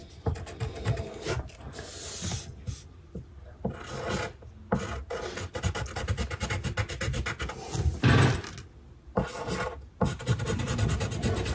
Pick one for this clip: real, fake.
real